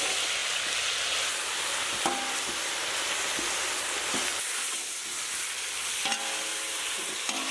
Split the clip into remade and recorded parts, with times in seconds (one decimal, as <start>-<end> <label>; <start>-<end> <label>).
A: 0.0-6.5 recorded; 6.5-7.5 remade